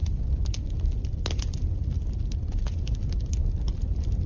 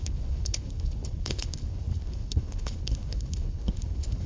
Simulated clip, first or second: second